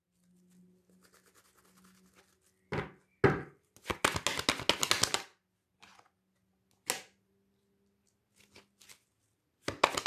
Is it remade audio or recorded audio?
recorded